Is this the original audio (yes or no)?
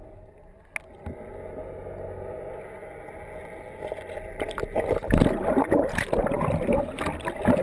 yes